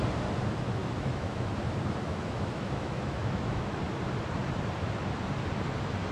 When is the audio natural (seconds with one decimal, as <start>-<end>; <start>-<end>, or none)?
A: 0.0-0.8; 1.5-2.1; 3.8-6.1